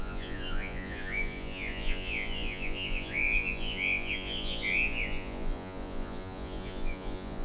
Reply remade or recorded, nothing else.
remade